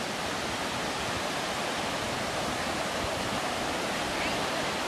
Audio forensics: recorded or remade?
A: recorded